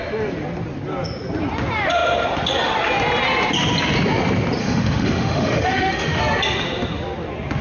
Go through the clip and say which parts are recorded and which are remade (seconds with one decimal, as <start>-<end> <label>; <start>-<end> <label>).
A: 0.0-4.6 recorded; 4.6-6.2 remade; 6.2-7.6 recorded